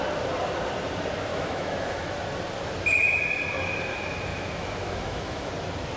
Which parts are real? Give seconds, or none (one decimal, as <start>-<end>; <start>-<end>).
0.0-1.3; 2.1-4.3; 5.5-6.0